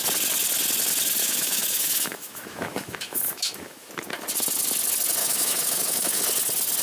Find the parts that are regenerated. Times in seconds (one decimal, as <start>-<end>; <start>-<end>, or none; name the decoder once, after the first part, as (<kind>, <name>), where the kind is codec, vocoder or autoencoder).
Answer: 1.2-3.9 (autoencoder, DAC-VAE); 5.2-6.2